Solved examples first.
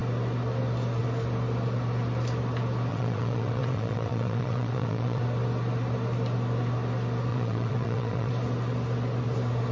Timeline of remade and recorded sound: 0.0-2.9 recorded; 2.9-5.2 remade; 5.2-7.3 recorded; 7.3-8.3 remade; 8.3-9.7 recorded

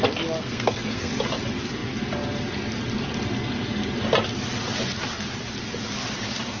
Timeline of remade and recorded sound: 0.0-0.4 recorded; 0.4-1.1 remade; 1.1-6.6 recorded

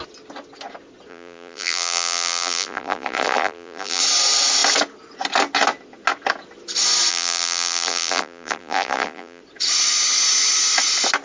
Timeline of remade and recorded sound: 0.0-1.1 recorded; 1.1-4.0 remade; 4.0-7.1 recorded; 7.1-9.4 remade; 9.4-11.2 recorded

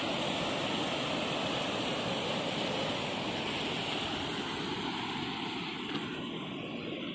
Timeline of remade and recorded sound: 0.0-7.1 recorded